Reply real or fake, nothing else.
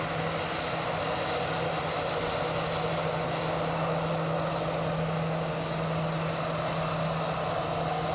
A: real